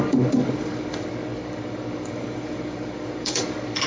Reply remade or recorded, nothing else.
remade